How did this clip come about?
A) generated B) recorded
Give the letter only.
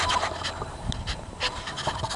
B